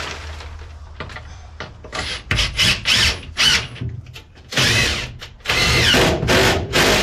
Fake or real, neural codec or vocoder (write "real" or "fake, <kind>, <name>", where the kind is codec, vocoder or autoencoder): fake, vocoder, BigVGAN v2